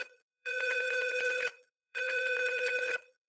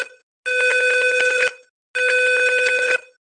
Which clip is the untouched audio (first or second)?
second